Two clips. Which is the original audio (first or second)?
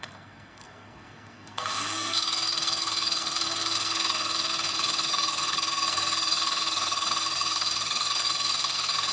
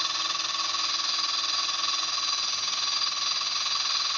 second